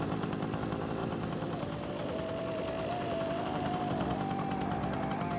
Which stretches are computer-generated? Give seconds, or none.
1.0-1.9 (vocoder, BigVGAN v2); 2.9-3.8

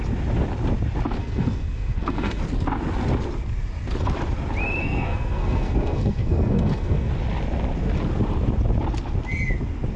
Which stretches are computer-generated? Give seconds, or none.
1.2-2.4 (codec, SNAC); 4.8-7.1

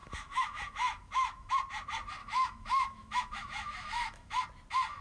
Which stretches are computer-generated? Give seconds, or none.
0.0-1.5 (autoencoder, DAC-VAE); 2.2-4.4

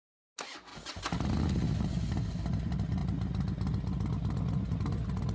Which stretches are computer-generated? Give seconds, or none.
none